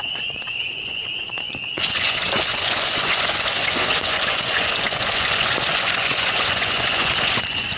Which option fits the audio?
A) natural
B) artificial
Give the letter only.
B